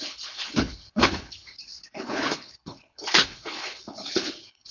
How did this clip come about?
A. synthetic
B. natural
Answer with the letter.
A